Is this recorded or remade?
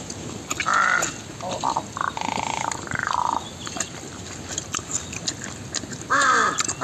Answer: recorded